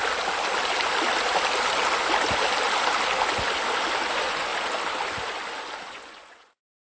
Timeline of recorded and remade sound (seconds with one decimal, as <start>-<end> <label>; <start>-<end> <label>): 0.0-4.1 recorded; 4.1-4.5 remade; 4.5-5.8 recorded; 5.8-6.9 remade